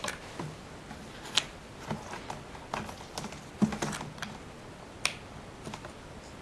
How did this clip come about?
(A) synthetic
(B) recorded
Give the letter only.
B